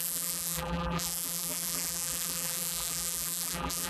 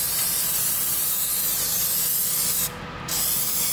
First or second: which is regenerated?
first